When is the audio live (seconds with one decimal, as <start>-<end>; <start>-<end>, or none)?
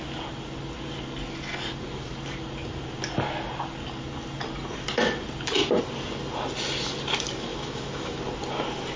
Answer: 0.0-7.5; 8.2-9.0